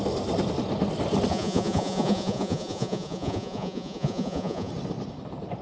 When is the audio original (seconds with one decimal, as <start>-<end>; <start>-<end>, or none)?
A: 0.0-1.3; 4.7-5.6